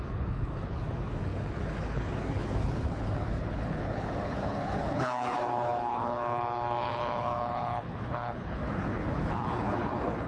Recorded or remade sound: remade